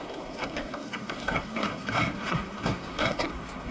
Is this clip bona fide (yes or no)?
no